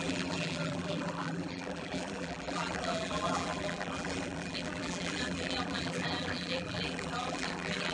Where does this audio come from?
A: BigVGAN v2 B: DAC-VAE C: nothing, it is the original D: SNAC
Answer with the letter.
A